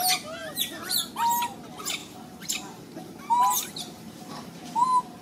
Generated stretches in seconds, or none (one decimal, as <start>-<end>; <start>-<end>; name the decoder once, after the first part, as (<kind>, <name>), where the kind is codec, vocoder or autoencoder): 0.4-1.1 (vocoder, BigVGAN v2); 2.0-5.2